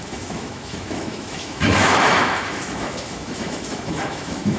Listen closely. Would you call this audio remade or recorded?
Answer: remade